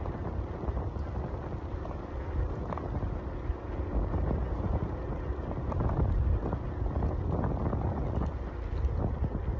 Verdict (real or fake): real